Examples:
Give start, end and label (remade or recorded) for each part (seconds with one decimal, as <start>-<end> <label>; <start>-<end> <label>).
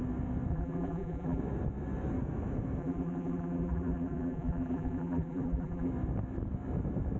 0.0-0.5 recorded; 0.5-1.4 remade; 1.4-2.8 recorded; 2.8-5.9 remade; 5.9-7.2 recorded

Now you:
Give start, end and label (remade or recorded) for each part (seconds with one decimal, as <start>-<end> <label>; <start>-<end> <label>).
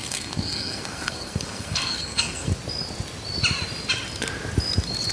0.0-2.5 remade; 2.5-5.1 recorded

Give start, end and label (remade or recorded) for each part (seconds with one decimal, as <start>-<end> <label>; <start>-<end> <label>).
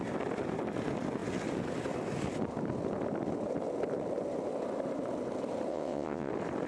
0.0-5.7 recorded; 5.7-6.3 remade; 6.3-6.7 recorded